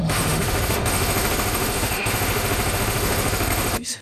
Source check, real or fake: fake